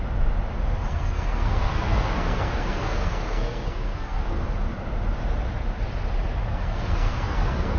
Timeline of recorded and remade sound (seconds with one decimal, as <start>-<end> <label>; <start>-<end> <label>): 0.0-0.8 recorded; 0.8-4.4 remade; 4.4-6.4 recorded; 6.4-7.8 remade